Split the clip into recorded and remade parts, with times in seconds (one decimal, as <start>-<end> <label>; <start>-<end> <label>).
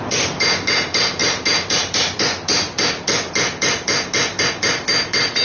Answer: 0.0-5.4 recorded